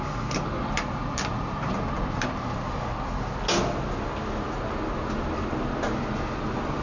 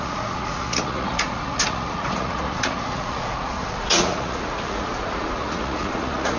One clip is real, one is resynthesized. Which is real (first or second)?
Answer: first